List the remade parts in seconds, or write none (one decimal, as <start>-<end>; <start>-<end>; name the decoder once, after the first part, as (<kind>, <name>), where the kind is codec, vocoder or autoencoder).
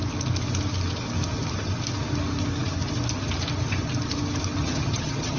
4.6-5.4 (vocoder, HiFi-GAN)